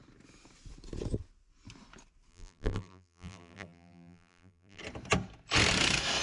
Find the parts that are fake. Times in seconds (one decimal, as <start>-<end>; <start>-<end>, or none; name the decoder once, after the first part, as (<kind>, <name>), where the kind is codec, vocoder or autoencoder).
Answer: 2.3-4.8 (vocoder, BigVGAN v2)